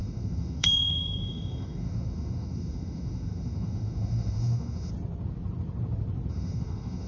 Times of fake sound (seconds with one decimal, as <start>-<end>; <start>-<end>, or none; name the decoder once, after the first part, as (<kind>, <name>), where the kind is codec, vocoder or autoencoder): 0.0-4.9 (autoencoder, DAC-VAE); 6.3-7.1